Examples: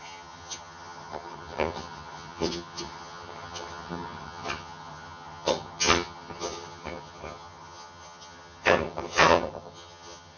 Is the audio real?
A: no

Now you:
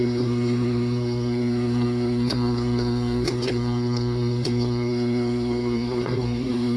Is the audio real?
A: no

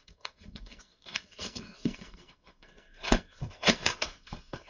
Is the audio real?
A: no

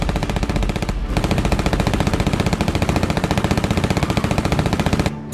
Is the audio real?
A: yes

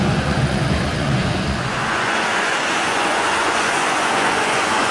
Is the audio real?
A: no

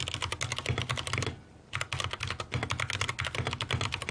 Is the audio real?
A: yes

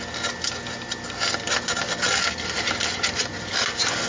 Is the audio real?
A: yes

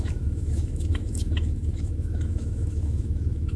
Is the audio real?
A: no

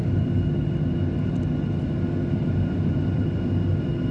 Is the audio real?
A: yes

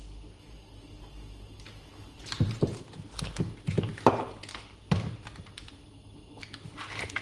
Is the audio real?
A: yes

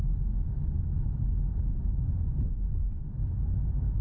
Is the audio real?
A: yes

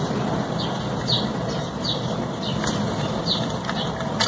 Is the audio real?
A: yes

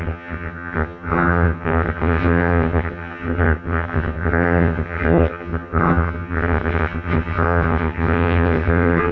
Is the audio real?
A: no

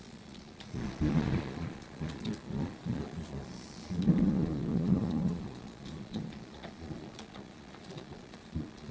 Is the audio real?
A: no